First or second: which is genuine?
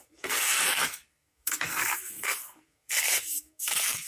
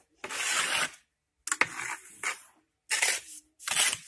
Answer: second